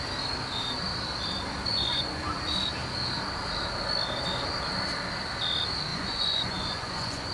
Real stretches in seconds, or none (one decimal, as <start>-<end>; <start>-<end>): 0.0-1.7; 2.2-5.9